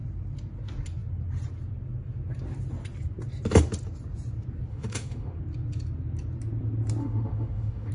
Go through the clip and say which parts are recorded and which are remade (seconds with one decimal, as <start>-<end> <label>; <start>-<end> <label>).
0.0-4.7 recorded; 4.7-5.4 remade; 5.4-7.0 recorded; 7.0-7.9 remade